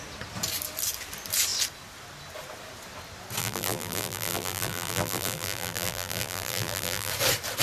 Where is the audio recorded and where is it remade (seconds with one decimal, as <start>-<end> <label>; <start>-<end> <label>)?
0.0-3.4 recorded; 3.4-7.1 remade; 7.1-7.6 recorded